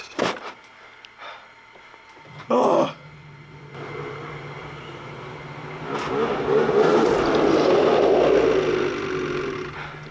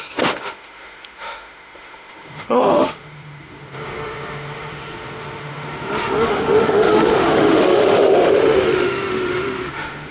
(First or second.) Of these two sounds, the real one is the first